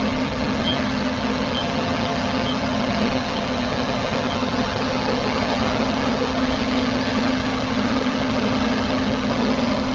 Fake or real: fake